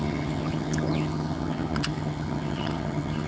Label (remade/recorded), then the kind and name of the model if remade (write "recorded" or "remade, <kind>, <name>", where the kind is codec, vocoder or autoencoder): remade, vocoder, HiFi-GAN